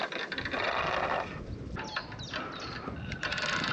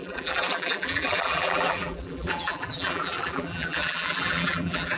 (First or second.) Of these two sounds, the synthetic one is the second